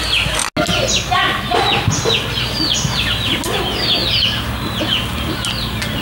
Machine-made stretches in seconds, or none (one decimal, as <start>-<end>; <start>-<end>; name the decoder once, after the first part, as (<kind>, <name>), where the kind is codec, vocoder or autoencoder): none

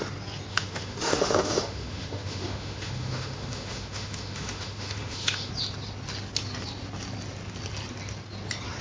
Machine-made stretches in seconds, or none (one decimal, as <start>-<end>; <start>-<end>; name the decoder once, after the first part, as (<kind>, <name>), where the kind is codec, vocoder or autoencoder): 0.5-5.5 (autoencoder, DAC-VAE)

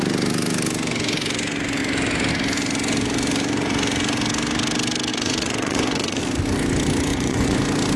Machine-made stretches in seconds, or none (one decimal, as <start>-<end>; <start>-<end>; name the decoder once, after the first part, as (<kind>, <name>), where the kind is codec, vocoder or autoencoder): 5.1-6.2 (vocoder, Vocos); 7.1-7.6

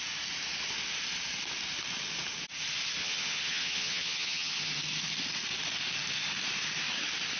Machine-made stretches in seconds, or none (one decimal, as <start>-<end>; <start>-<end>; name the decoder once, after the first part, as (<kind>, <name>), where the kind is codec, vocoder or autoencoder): 3.0-4.7 (vocoder, HiFi-GAN)

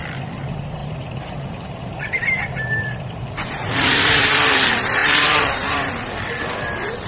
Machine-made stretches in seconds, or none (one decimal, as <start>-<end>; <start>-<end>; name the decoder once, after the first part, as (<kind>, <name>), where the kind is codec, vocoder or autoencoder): 0.8-4.2 (vocoder, BigVGAN v2); 5.0-6.1

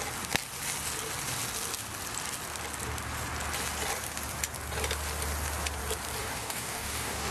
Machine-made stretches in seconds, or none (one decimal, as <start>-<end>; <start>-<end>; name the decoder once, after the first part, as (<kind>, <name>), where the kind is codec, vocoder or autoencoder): 6.2-7.3 (codec, DAC)